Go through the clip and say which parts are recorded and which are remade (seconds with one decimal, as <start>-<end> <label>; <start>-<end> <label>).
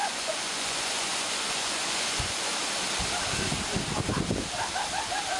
0.0-2.5 remade; 2.5-5.4 recorded